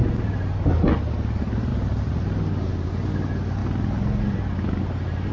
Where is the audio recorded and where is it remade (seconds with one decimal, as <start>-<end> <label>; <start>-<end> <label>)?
0.0-5.3 recorded